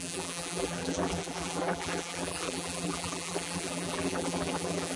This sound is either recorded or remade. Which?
remade